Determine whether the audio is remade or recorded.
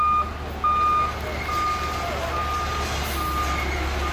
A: recorded